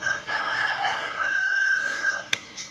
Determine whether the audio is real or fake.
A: fake